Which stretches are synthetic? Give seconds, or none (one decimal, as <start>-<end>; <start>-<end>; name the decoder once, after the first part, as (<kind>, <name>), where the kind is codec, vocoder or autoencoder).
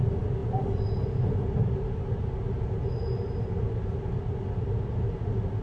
none